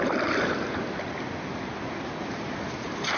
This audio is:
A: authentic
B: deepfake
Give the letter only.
A